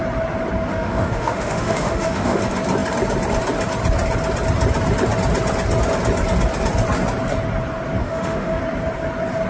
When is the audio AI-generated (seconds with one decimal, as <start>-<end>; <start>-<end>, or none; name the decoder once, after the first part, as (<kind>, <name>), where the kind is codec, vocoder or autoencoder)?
0.7-2.4 (autoencoder, DAC-VAE); 8.0-8.6